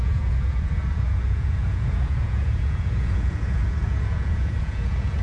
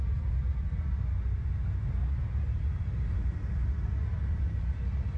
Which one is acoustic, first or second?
second